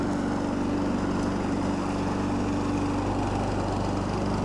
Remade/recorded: recorded